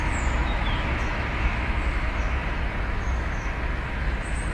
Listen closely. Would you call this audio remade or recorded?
remade